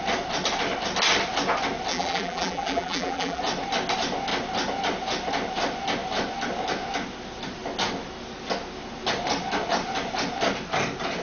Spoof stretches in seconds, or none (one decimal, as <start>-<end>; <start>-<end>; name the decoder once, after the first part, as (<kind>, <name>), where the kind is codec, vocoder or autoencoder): 1.9-3.4 (vocoder, BigVGAN v2)